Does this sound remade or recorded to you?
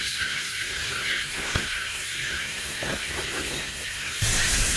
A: remade